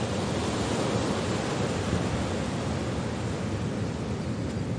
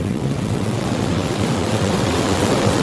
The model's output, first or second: second